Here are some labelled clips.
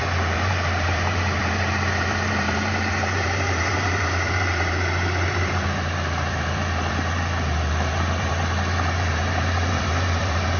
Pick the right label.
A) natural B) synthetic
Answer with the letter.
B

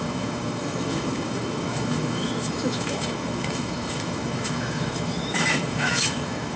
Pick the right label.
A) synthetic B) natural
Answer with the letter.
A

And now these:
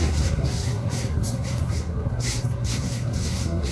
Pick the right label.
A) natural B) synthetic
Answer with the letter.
B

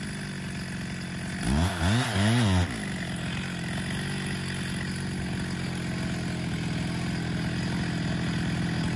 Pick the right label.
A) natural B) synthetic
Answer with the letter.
A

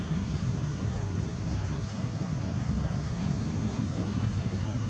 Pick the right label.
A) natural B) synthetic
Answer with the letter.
B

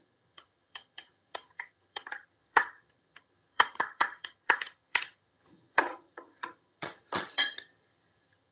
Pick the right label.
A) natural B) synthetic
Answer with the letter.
B